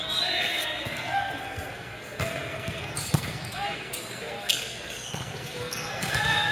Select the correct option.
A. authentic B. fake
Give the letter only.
B